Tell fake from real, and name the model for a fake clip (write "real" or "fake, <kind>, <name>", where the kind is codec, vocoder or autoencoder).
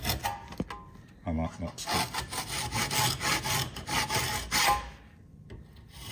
real